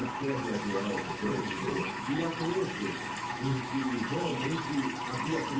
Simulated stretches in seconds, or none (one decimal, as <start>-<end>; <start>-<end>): 0.0-2.3; 3.2-4.3